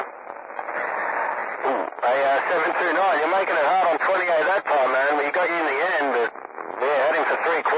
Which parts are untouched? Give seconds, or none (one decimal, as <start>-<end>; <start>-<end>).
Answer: 0.0-4.6; 5.9-7.8